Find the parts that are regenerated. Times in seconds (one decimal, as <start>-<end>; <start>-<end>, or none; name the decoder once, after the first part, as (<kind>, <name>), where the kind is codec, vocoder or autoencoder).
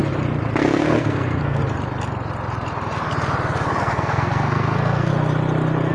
0.6-1.6 (codec, SNAC); 3.8-5.1